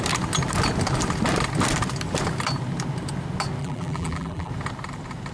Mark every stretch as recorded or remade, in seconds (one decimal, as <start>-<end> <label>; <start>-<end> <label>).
0.0-3.6 recorded; 3.6-4.5 remade; 4.5-5.3 recorded